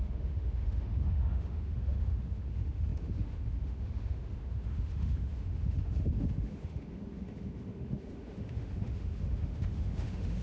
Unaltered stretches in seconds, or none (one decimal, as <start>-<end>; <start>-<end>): none